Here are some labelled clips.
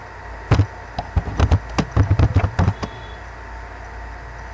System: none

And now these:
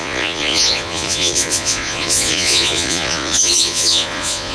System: vocoder, Vocos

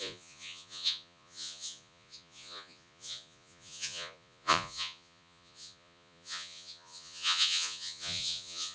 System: vocoder, Vocos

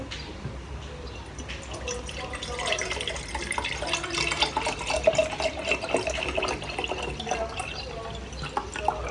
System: none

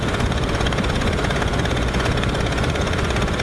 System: vocoder, Vocos